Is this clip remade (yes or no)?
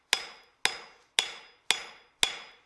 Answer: no